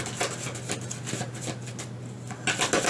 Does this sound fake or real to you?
real